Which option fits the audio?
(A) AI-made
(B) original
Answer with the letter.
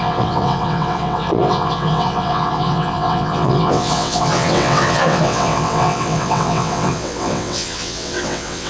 A